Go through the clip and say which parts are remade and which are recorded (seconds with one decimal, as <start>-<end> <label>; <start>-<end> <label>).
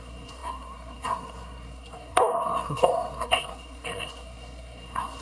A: 0.0-5.2 remade